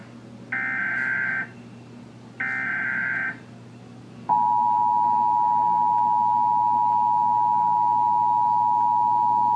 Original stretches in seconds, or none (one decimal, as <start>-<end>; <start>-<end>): 0.0-9.6